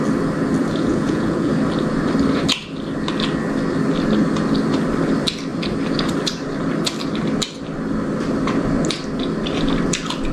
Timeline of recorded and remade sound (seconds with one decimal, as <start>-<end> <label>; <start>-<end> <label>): 0.0-0.6 recorded; 0.6-1.5 remade; 1.5-10.3 recorded

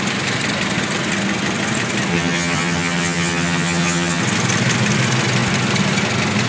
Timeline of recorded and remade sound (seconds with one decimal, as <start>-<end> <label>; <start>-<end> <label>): 0.0-2.1 recorded; 2.1-4.2 remade; 4.2-6.5 recorded